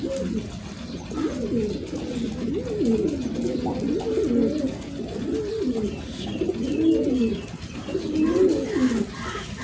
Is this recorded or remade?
recorded